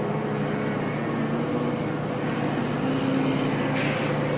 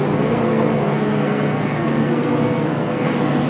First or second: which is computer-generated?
second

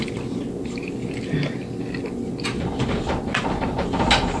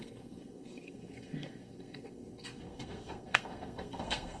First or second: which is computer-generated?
second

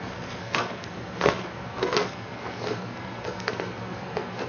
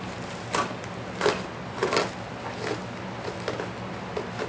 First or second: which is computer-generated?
first